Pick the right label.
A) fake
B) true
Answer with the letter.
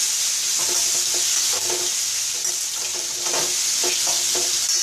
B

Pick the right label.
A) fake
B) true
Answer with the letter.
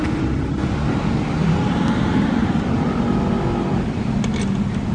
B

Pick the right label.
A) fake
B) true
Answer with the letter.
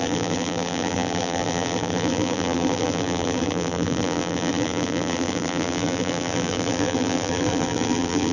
A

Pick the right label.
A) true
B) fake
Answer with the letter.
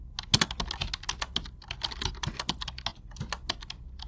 A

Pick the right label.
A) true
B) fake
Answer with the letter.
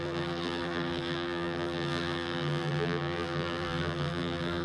B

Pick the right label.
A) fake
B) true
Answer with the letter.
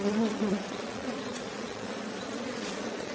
A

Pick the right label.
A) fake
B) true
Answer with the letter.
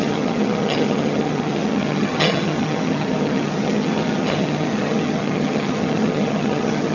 A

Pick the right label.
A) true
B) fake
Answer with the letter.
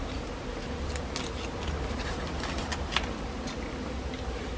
A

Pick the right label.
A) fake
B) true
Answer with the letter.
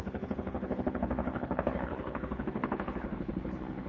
A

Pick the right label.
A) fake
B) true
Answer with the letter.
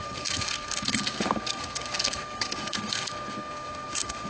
A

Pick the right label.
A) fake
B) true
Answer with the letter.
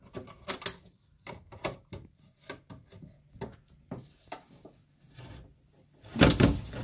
B